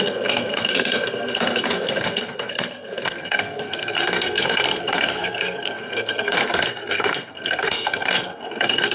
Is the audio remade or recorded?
remade